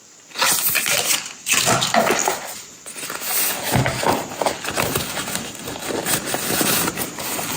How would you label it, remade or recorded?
recorded